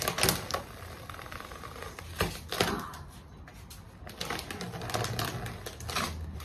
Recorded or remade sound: recorded